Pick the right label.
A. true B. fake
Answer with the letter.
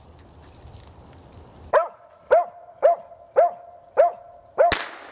A